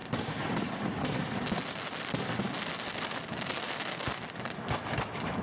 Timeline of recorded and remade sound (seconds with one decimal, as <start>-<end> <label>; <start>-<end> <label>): 0.0-5.4 recorded